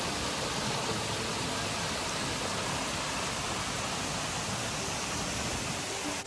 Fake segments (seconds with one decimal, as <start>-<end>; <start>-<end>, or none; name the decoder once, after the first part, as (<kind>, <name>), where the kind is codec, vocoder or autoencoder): none